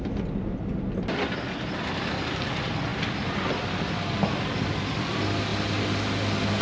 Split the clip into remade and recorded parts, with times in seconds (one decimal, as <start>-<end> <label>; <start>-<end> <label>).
0.0-6.6 recorded